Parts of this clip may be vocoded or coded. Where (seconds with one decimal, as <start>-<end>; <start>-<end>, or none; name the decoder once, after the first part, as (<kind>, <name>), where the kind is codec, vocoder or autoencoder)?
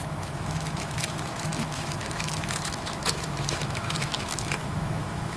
0.0-5.4 (autoencoder, DAC-VAE)